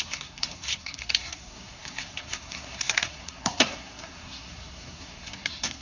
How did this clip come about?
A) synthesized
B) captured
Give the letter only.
A